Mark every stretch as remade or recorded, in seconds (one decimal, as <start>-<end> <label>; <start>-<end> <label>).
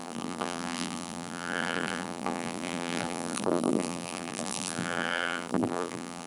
0.0-6.3 remade